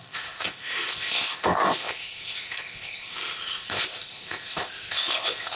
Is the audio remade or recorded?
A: remade